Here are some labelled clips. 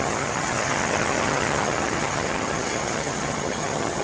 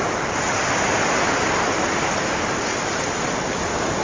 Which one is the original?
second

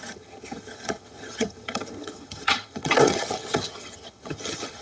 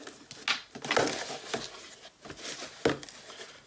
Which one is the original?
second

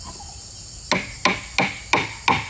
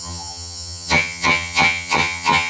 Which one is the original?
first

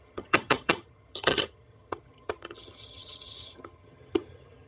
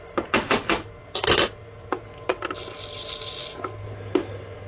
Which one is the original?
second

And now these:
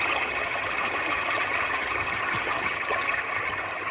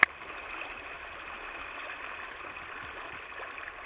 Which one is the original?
second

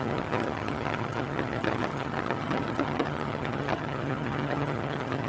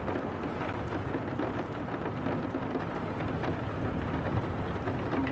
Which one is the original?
second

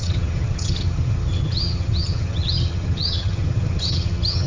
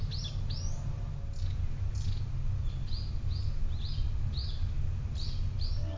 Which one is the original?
second